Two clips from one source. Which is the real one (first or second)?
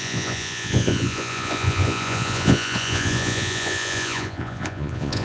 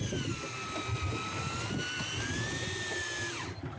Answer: second